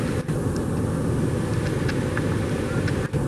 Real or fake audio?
real